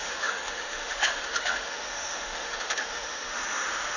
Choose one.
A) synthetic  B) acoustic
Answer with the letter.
A